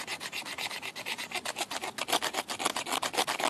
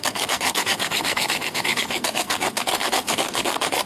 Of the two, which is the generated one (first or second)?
second